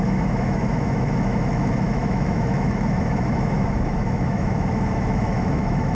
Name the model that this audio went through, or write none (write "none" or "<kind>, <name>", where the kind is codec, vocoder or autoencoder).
autoencoder, DAC-VAE